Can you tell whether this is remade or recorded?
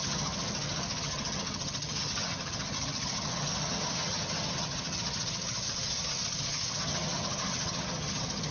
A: remade